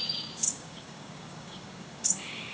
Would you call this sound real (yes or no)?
no